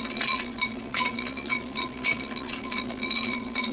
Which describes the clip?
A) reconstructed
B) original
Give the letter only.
A